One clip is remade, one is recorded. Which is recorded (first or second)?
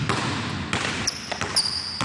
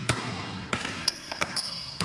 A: first